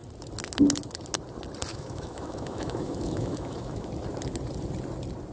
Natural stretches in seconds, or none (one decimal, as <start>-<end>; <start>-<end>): 0.0-1.7; 3.9-5.3